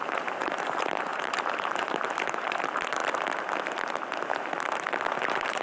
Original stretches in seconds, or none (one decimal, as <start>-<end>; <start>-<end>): 3.0-5.1